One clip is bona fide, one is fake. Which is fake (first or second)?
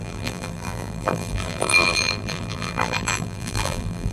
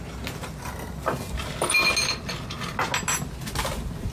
first